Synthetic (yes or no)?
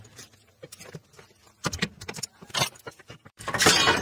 yes